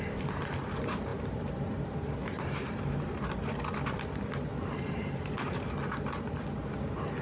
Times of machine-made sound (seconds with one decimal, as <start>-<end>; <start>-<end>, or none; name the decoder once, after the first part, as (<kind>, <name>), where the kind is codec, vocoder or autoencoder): 1.1-3.2 (vocoder, BigVGAN v2); 4.5-5.6